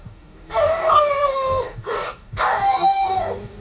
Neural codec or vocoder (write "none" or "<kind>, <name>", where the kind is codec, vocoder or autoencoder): codec, DAC